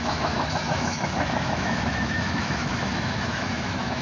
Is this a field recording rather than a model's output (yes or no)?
no